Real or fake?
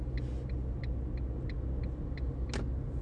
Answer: real